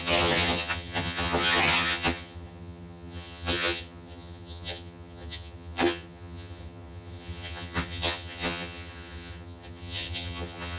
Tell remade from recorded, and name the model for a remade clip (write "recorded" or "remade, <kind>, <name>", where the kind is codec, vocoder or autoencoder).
remade, vocoder, HiFi-GAN